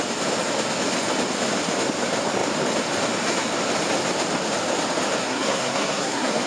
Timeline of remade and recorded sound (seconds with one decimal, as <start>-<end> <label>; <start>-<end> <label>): 0.0-5.2 recorded; 5.2-6.5 remade